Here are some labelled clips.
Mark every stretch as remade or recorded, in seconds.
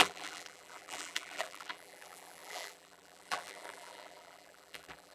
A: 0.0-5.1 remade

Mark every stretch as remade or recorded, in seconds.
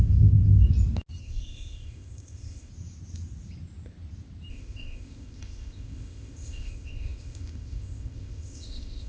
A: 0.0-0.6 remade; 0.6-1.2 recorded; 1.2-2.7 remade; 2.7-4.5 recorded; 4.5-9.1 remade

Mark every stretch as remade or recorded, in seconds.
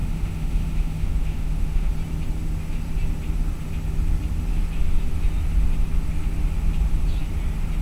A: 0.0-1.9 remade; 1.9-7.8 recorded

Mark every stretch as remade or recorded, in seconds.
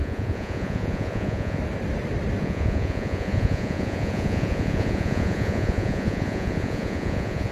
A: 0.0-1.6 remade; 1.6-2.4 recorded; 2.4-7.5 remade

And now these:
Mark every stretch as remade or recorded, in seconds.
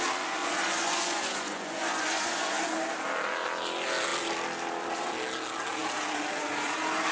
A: 0.0-0.4 recorded; 0.4-2.6 remade; 2.6-7.1 recorded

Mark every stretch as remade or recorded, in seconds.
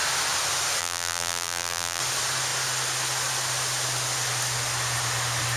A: 0.0-0.8 recorded; 0.8-2.0 remade; 2.0-5.6 recorded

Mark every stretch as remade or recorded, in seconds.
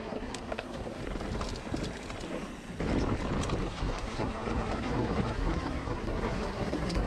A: 0.0-1.0 remade; 1.0-3.6 recorded; 3.6-7.1 remade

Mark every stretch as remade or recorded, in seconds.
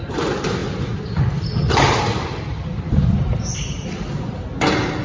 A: 0.0-0.6 recorded; 0.6-3.6 remade; 3.6-5.0 recorded